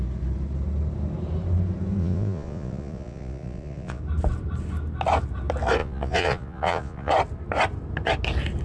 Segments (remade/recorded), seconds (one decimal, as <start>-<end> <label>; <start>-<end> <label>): 0.0-2.0 recorded; 2.0-4.0 remade; 4.0-5.8 recorded; 5.8-7.1 remade; 7.1-8.6 recorded